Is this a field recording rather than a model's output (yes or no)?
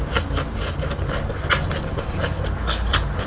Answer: yes